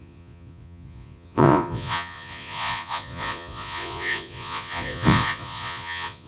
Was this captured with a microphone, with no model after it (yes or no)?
no